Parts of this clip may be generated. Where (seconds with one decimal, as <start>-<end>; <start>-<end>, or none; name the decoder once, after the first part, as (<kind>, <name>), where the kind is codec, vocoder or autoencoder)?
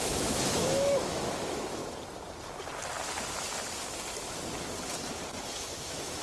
0.0-1.8 (autoencoder, DAC-VAE); 5.5-6.2